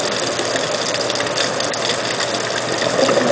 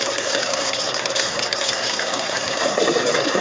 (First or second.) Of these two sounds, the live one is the first